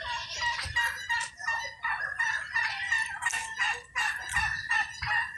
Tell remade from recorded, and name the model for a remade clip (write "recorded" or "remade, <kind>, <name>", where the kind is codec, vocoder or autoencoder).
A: recorded